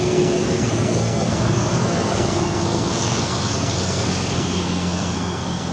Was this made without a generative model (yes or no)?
no